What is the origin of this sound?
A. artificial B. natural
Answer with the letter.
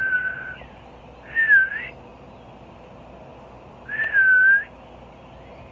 B